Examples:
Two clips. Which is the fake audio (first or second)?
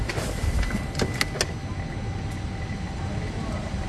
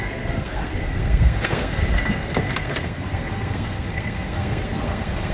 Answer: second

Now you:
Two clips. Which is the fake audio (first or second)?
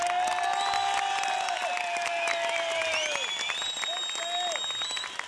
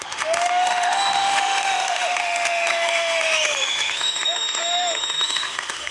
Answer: second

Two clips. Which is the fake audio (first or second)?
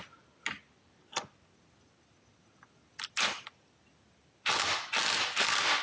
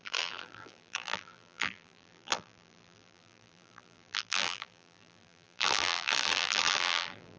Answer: second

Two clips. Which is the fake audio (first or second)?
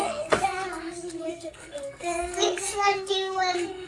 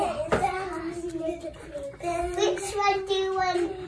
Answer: first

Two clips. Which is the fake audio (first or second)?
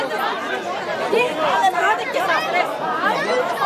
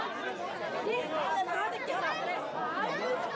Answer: first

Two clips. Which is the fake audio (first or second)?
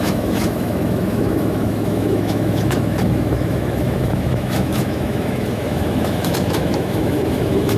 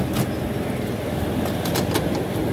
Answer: first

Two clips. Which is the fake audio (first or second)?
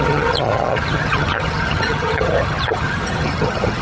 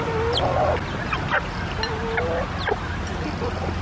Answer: first